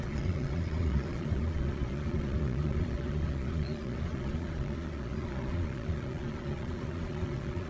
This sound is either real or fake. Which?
fake